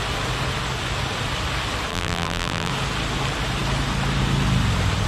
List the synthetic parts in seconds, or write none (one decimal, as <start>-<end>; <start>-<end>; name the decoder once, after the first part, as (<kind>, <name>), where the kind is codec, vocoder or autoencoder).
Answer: 1.9-2.7 (vocoder, BigVGAN v2)